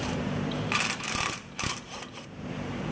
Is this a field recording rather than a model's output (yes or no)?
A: no